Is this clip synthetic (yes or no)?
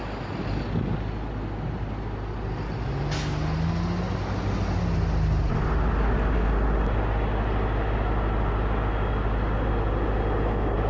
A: no